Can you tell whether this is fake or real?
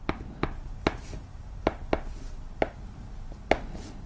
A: real